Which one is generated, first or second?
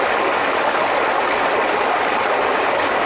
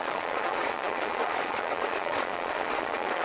second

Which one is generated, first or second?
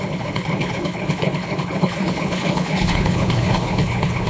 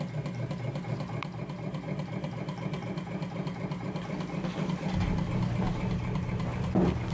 first